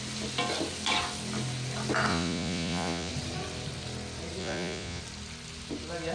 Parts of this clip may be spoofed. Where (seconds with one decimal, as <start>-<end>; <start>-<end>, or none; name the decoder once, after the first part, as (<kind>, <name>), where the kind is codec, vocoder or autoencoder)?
2.1-3.1 (vocoder, Vocos); 4.4-5.0